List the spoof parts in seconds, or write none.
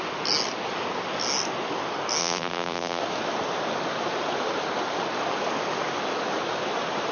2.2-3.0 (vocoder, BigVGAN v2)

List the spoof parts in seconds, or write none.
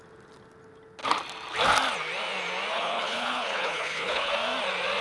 2.7-4.3 (codec, HILCodec)